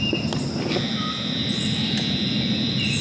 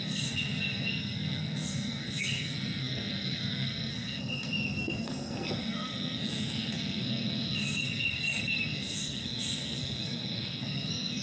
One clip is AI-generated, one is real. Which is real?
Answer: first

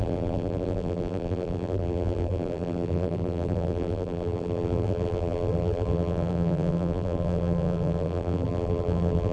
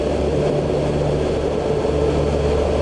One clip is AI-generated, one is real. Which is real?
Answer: second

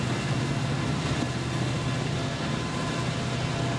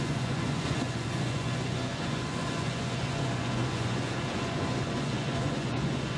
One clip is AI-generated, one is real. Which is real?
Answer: first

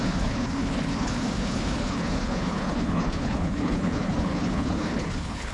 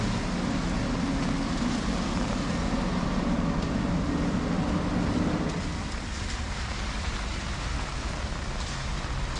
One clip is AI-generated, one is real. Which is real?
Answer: second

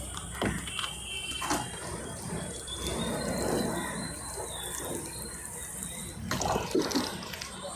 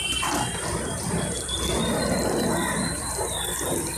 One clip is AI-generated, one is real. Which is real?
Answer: first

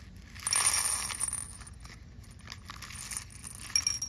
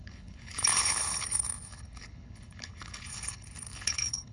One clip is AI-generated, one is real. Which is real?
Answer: first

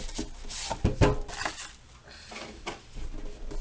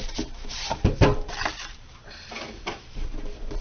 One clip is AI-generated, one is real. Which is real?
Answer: first